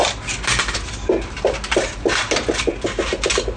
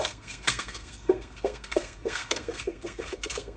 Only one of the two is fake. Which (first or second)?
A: second